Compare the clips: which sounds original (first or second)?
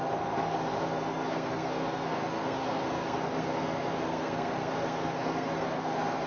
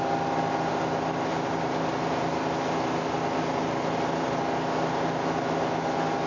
second